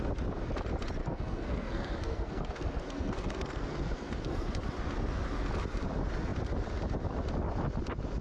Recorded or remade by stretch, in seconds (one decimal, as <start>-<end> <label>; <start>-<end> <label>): 0.0-1.0 recorded; 1.0-4.6 remade; 4.6-8.2 recorded